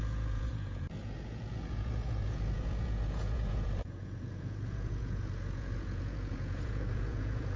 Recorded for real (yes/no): no